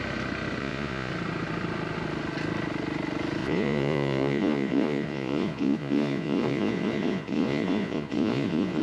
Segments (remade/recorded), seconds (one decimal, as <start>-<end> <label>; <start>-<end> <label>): 0.0-0.6 recorded; 0.6-1.1 remade; 1.1-3.4 recorded; 3.4-8.8 remade